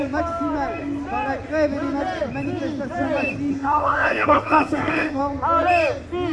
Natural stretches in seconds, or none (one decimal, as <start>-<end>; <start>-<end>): 0.0-3.5; 5.2-6.3